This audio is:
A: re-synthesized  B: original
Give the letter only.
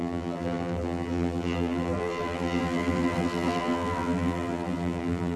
A